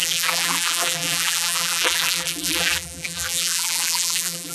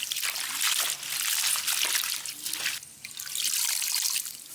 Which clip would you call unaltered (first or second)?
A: second